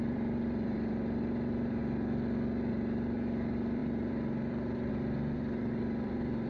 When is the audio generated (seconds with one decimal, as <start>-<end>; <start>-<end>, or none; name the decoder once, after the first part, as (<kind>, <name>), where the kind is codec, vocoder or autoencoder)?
0.0-1.8 (vocoder, BigVGAN v2); 2.7-6.5